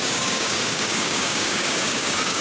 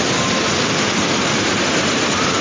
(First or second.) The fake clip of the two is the first